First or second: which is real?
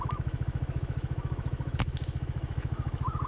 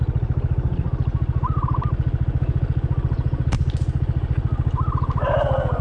second